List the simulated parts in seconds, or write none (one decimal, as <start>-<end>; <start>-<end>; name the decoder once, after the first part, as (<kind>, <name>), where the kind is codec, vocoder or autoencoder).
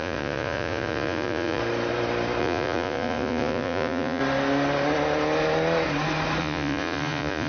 0.0-1.6 (vocoder, Vocos); 2.4-4.2; 6.4-7.5